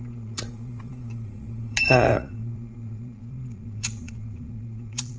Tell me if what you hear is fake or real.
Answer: fake